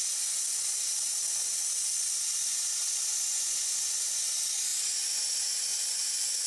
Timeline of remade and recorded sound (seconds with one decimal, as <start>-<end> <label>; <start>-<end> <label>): 0.0-3.1 recorded; 3.1-4.2 remade; 4.2-4.7 recorded; 4.7-5.2 remade; 5.2-5.7 recorded; 5.7-6.5 remade

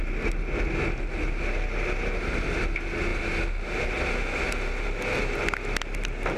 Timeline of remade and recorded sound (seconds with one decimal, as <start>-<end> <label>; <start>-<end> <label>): 0.0-6.4 recorded

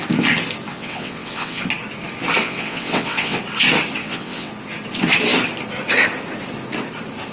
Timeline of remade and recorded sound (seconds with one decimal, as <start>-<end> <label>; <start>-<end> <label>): 0.0-0.7 recorded; 0.7-1.6 remade; 1.6-2.4 recorded; 2.4-3.4 remade; 3.4-4.0 recorded; 4.0-4.5 remade; 4.5-7.3 recorded

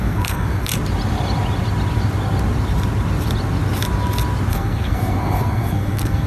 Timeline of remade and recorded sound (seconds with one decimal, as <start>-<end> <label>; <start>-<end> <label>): 0.0-0.7 remade; 0.7-4.5 recorded; 4.5-6.3 remade

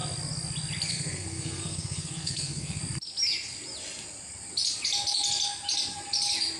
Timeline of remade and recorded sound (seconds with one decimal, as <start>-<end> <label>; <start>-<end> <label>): 0.0-0.9 recorded; 0.9-2.8 remade; 2.8-6.6 recorded